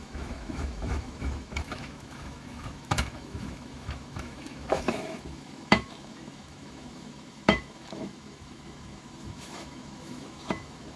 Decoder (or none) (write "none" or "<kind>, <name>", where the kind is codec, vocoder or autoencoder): autoencoder, DAC-VAE